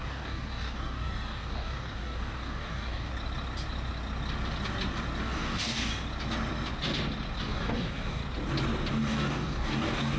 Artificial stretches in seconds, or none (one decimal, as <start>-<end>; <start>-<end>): 0.0-3.1; 5.2-5.9; 7.4-8.2; 8.9-10.2